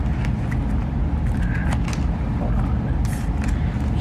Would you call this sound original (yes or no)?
yes